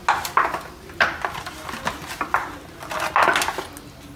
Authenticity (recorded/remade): recorded